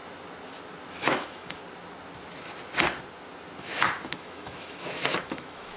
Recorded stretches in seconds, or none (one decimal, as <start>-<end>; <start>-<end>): 0.0-0.9; 1.6-3.6